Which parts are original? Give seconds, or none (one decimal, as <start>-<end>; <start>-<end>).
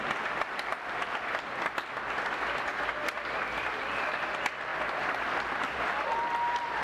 none